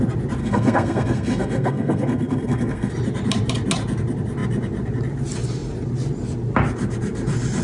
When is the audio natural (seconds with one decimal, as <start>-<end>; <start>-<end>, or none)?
0.0-0.4; 2.9-7.6